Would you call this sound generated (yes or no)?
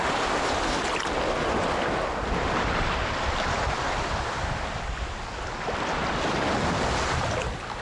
no